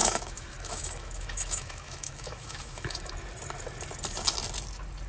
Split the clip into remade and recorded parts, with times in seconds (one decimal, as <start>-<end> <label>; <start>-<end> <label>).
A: 0.0-3.1 remade; 3.1-5.1 recorded